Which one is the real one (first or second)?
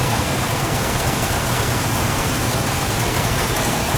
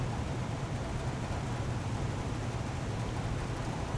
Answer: second